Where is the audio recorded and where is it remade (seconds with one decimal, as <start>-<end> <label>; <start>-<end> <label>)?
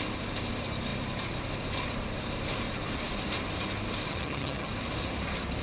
0.0-4.1 recorded; 4.1-4.7 remade; 4.7-5.6 recorded